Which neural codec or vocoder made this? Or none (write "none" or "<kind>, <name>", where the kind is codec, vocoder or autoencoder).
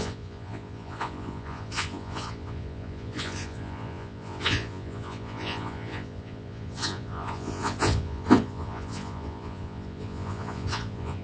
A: vocoder, Vocos